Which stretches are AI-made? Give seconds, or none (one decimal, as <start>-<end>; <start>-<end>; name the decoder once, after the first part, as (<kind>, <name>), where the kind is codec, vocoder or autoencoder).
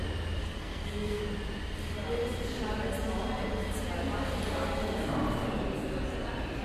0.4-1.2 (codec, SNAC)